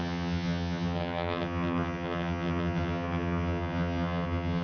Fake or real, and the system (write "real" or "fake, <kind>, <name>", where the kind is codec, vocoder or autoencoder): fake, vocoder, HiFi-GAN